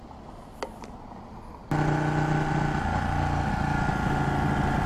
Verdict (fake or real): real